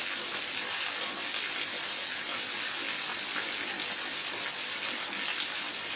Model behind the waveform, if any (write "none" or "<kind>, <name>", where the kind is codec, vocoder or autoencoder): none